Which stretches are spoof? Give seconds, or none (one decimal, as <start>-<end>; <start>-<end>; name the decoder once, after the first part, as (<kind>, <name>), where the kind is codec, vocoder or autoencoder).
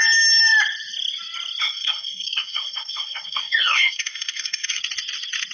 1.6-4.8 (codec, SNAC)